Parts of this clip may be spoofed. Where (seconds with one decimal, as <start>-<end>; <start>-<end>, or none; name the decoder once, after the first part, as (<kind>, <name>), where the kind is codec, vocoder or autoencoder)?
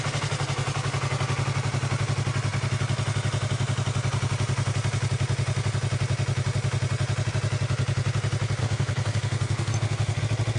8.6-10.2 (codec, SNAC)